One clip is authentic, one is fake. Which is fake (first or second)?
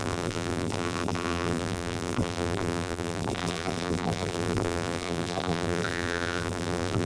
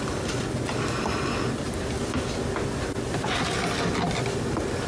first